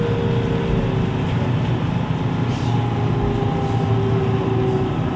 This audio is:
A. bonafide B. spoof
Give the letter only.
A